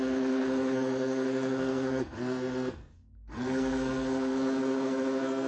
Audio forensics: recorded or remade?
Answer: remade